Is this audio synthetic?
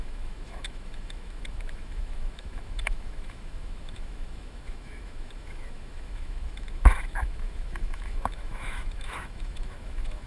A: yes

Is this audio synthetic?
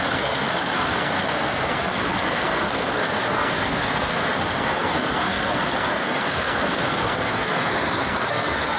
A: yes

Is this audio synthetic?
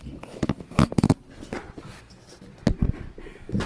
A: no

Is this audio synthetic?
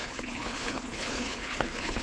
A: yes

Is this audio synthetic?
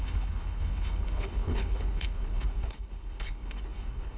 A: yes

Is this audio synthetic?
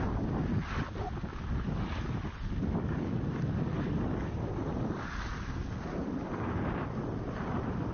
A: no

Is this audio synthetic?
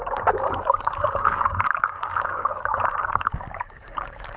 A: yes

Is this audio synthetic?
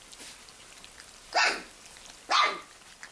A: no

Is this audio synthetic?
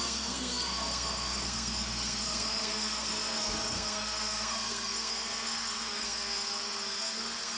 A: yes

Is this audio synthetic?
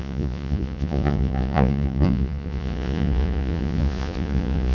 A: yes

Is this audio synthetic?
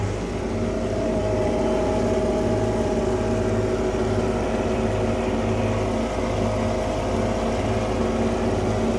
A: no